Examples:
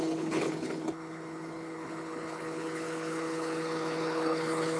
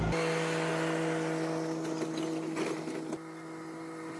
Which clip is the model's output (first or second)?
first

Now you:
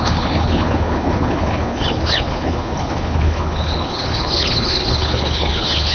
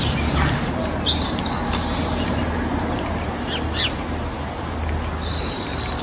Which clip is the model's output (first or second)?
first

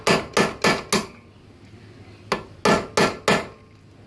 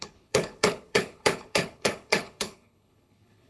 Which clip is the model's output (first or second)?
second